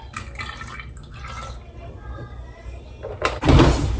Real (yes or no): yes